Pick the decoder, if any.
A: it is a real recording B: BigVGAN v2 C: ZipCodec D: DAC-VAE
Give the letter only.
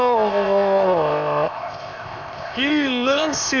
C